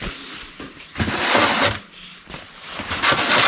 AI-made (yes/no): no